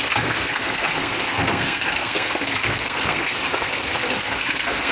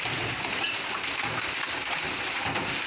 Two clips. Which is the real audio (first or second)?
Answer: second